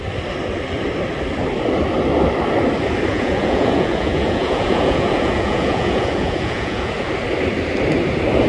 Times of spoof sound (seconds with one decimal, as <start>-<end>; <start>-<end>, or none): 3.1-6.9